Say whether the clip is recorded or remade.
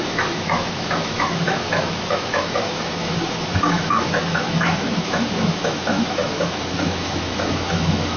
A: remade